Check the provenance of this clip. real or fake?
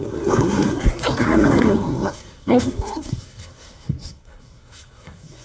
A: fake